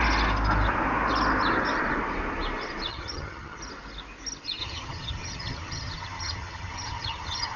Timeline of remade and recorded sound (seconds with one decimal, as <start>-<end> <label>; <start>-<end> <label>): 0.0-2.9 recorded; 2.9-3.6 remade; 3.6-4.6 recorded; 4.6-7.6 remade